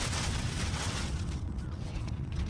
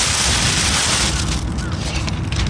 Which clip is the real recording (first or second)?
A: second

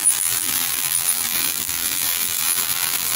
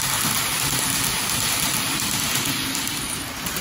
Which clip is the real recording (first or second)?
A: second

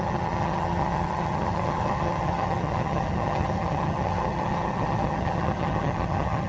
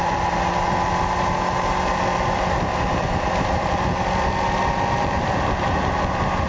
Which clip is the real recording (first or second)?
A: second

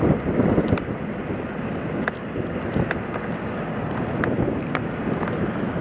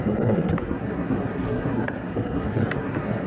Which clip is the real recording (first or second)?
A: first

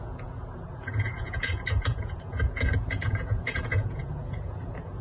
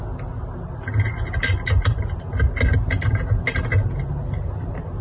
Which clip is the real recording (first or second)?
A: second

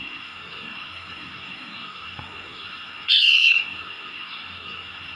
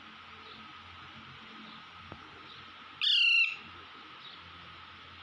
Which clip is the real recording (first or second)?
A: second